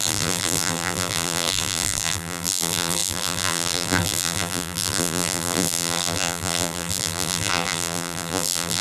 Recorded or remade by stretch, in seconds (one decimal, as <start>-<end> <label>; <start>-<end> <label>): 0.0-8.8 remade